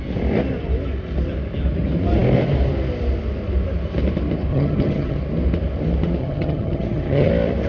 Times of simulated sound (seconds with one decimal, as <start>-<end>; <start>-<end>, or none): 4.5-5.2; 6.2-7.3